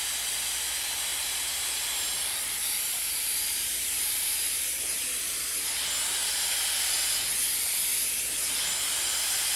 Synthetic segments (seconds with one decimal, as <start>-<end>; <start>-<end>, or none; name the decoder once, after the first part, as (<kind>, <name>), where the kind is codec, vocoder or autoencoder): 1.1-5.4 (vocoder, BigVGAN v2)